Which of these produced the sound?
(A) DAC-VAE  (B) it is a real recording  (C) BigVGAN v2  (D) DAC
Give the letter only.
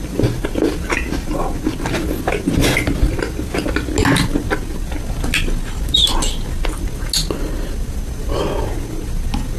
B